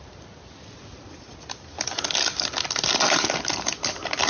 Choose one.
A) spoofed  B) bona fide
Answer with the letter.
B